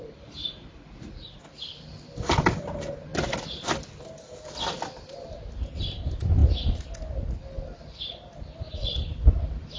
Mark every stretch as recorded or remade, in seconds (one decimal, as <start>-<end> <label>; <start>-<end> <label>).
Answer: 0.0-0.4 recorded; 0.4-1.4 remade; 1.4-9.8 recorded